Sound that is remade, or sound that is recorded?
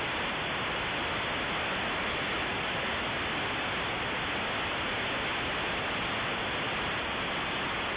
recorded